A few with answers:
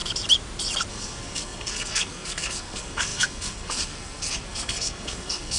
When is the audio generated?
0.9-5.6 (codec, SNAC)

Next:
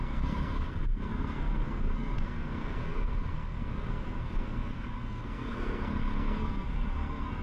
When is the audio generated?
0.0-7.4 (codec, SNAC)

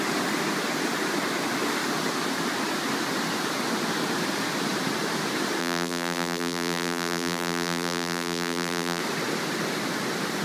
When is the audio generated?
5.6-9.0 (vocoder, BigVGAN v2)

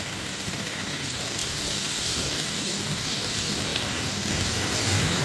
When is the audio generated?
0.0-5.2 (codec, DAC)

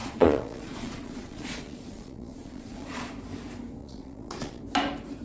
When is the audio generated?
0.0-3.1 (vocoder, Vocos); 3.8-4.6